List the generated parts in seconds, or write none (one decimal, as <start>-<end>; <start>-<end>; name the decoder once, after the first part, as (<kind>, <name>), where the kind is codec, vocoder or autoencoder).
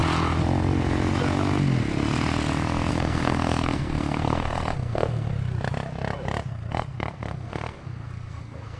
2.9-5.3 (codec, SNAC); 6.5-8.8